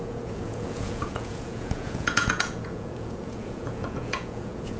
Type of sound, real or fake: fake